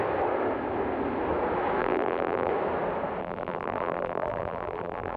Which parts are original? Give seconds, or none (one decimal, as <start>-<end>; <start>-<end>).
0.0-1.8; 2.5-3.2